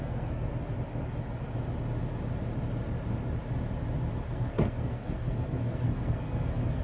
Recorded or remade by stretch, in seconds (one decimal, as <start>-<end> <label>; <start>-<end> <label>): 0.0-0.5 remade; 0.5-4.3 recorded; 4.3-6.8 remade